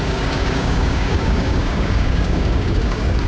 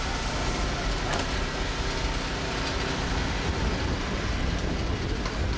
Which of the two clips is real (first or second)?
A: second